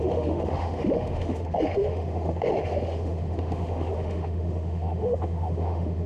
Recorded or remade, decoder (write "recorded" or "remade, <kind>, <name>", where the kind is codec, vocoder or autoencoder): remade, autoencoder, DAC-VAE